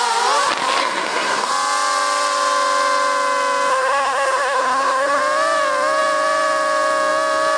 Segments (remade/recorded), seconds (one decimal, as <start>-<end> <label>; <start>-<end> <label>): 0.0-0.8 recorded; 0.8-1.5 remade; 1.5-3.7 recorded; 3.7-5.2 remade; 5.2-7.6 recorded